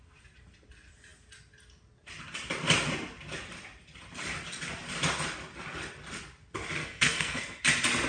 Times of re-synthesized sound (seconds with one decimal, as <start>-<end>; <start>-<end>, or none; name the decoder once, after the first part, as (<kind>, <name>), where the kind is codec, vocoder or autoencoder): 6.8-7.6 (codec, SNAC)